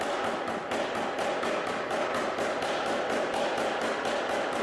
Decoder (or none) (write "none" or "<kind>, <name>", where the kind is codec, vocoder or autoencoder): none